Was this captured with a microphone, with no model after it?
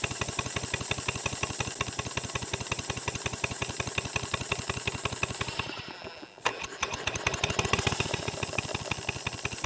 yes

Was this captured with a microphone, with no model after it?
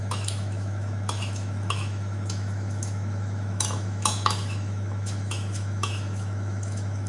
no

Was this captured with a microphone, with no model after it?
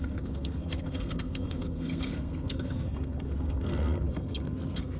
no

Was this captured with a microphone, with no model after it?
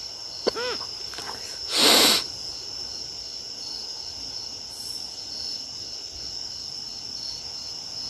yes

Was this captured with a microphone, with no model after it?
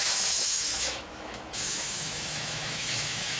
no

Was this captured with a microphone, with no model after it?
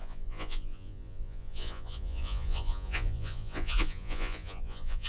no